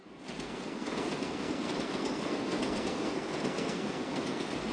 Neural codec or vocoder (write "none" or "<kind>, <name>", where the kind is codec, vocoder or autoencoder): codec, SNAC